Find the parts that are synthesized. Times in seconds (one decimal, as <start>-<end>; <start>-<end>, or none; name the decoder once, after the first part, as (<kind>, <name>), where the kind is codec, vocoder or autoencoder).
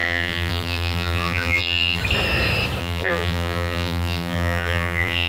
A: 0.0-2.0 (vocoder, BigVGAN v2); 2.8-5.3